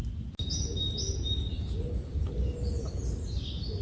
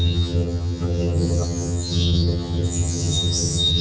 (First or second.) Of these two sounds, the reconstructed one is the second